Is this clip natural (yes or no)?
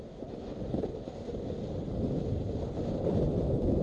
yes